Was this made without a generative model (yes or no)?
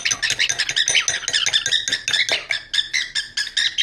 yes